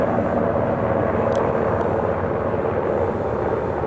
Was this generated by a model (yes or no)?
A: no